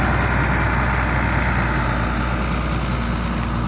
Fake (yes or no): no